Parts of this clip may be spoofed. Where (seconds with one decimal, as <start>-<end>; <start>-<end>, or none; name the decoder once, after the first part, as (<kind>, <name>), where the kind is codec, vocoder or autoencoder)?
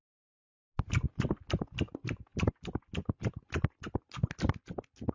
none